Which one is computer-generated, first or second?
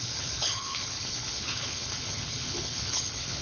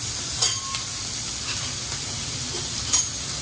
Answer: first